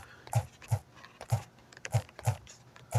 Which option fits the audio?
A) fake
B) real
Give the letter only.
A